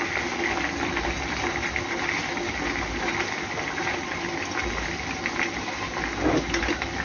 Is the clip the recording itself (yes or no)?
yes